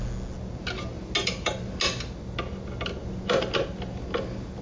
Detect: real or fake real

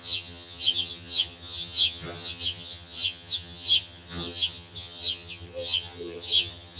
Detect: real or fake fake